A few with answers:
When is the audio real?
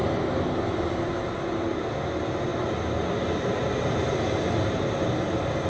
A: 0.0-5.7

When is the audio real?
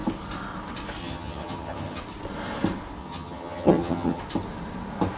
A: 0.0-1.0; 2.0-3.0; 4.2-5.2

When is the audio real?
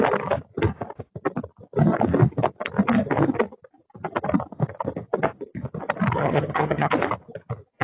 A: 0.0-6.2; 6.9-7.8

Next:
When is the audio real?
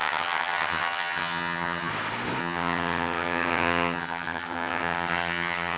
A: 1.9-2.4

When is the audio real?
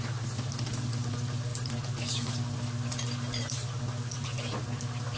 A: 0.0-5.2